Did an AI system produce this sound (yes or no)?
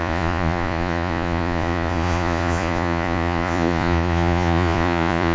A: yes